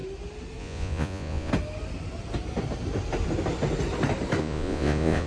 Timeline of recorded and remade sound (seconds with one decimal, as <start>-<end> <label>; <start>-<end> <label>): 0.0-0.6 recorded; 0.6-1.5 remade; 1.5-4.4 recorded; 4.4-5.3 remade